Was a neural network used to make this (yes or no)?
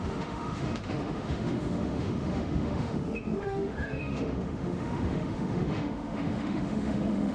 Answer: yes